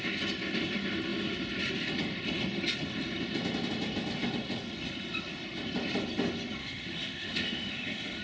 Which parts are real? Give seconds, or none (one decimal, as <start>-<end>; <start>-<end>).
0.0-6.6